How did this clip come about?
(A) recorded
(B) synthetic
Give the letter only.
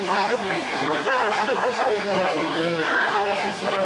B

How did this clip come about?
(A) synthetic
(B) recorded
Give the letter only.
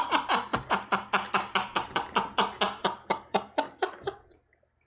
B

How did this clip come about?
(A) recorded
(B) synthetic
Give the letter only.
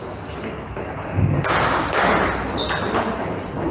A